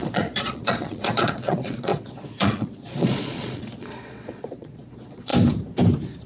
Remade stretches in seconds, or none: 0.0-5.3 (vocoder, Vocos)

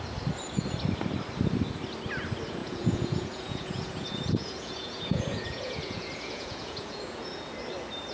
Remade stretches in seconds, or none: 2.6-7.4 (vocoder, Vocos)

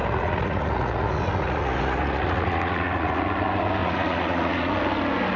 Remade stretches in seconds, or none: 0.0-3.2 (vocoder, Vocos); 3.8-4.7

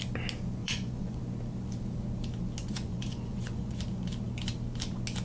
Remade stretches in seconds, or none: 0.6-1.2 (vocoder, Vocos); 2.6-3.8

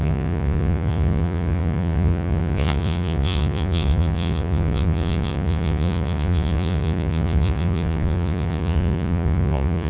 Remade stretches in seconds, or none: 0.0-9.9 (vocoder, Vocos)

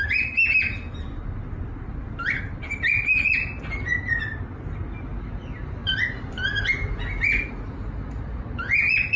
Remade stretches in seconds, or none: none